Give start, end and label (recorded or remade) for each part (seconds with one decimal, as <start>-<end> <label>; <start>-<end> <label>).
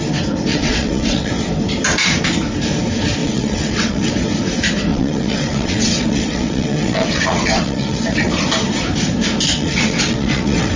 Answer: 0.0-0.5 recorded; 0.5-1.3 remade; 1.3-3.2 recorded; 3.2-4.1 remade; 4.1-4.9 recorded; 4.9-8.3 remade; 8.3-9.5 recorded; 9.5-10.8 remade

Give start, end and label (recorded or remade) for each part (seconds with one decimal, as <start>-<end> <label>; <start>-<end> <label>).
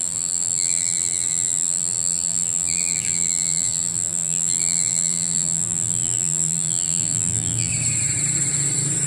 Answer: 0.0-7.7 remade; 7.7-9.1 recorded